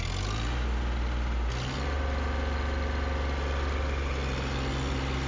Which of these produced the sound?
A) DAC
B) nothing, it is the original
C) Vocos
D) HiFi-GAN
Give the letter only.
B